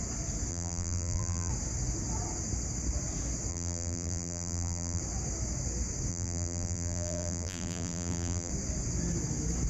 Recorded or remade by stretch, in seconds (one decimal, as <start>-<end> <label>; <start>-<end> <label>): 0.0-0.5 recorded; 0.5-1.5 remade; 1.5-3.5 recorded; 3.5-5.0 remade; 5.0-6.1 recorded; 6.1-8.5 remade; 8.5-9.7 recorded